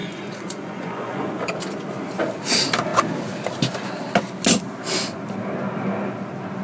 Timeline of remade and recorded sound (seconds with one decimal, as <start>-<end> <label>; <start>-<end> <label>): 0.0-1.5 remade; 1.5-6.6 recorded